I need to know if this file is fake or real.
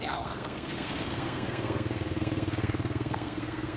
fake